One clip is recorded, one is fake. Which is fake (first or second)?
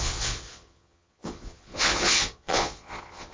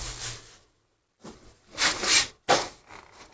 first